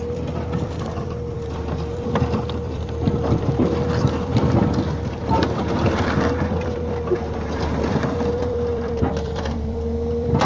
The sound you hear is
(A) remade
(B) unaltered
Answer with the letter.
A